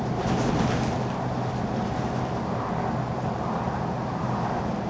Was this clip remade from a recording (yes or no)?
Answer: no